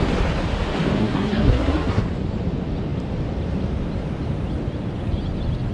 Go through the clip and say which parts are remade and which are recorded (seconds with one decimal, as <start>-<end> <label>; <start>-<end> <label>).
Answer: 0.0-1.0 recorded; 1.0-2.0 remade; 2.0-5.7 recorded